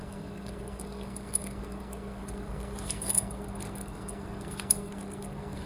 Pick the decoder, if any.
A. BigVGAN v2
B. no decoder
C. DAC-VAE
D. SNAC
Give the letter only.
D